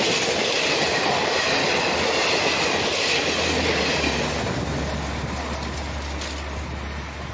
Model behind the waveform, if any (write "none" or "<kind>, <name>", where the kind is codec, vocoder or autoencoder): none